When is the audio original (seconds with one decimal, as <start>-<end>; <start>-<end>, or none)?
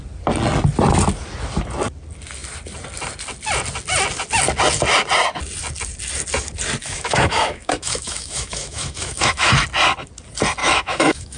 0.0-6.8; 9.5-10.6